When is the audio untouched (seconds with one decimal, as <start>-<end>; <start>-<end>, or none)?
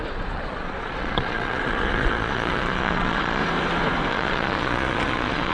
3.4-4.1